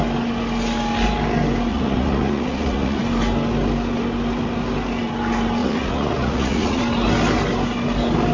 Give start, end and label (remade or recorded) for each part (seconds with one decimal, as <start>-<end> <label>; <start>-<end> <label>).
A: 0.0-1.7 recorded; 1.7-3.0 remade; 3.0-5.6 recorded; 5.6-6.8 remade; 6.8-8.3 recorded